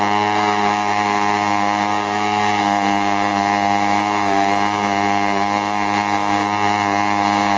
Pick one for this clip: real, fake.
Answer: fake